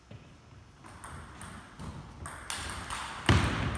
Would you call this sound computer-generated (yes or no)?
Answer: no